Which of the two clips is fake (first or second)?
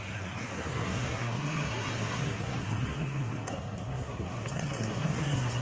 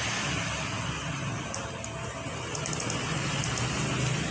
first